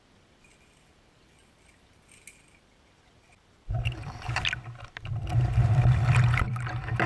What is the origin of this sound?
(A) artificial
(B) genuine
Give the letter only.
A